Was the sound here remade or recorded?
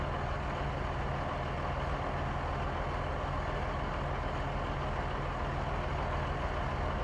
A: recorded